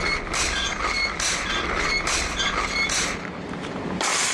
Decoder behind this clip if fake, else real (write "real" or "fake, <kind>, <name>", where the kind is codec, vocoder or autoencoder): real